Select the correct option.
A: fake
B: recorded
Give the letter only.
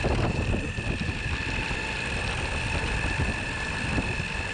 B